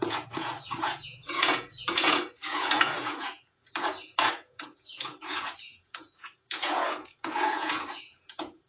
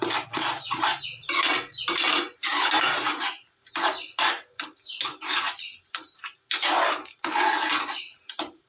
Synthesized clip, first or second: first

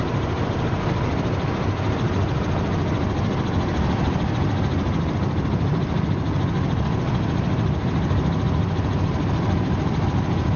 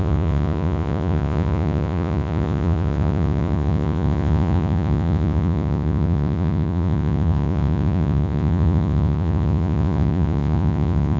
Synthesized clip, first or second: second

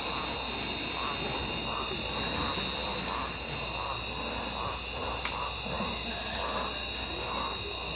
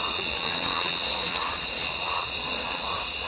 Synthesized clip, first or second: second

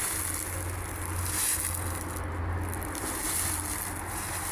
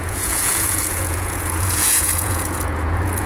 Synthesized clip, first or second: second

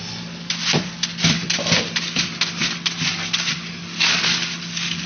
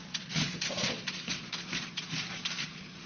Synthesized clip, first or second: second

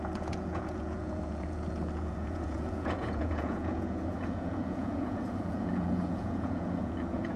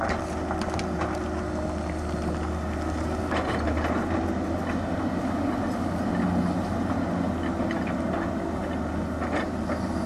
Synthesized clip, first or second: first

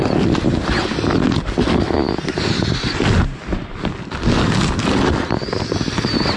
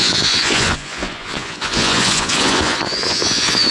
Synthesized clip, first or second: second